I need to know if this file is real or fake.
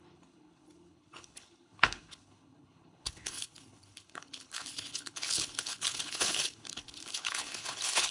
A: fake